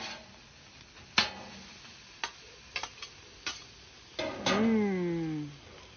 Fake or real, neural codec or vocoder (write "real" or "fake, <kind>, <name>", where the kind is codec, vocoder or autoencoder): real